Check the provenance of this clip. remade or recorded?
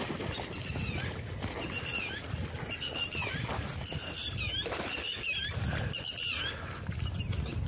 recorded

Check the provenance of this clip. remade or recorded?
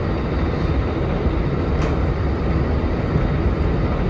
recorded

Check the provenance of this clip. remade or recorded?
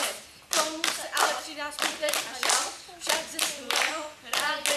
recorded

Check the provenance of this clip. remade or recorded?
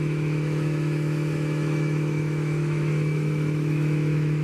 remade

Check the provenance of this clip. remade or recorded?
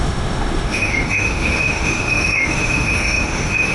remade